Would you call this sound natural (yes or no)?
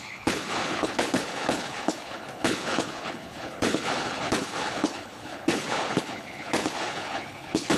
no